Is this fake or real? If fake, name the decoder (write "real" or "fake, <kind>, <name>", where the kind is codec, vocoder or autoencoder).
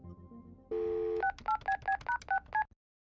real